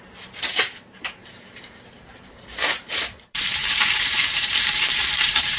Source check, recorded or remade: remade